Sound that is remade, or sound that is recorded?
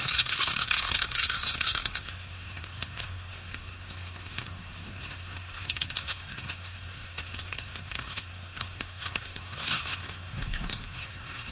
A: remade